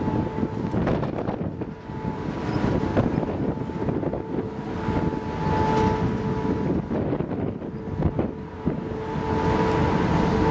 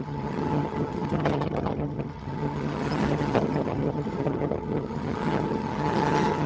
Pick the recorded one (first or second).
first